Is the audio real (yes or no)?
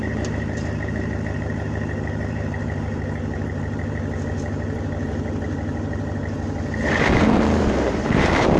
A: no